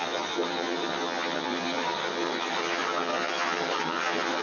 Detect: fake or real fake